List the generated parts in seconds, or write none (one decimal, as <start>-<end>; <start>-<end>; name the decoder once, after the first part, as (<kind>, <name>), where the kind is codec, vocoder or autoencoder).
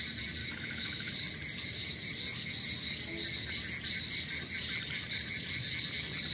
0.4-1.1 (autoencoder, DAC-VAE)